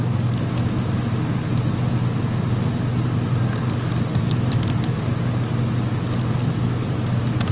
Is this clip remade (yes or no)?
no